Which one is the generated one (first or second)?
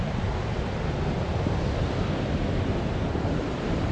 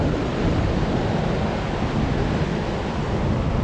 first